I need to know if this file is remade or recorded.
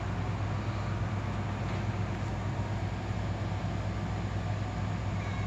recorded